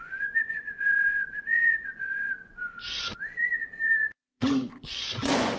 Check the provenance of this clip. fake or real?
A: fake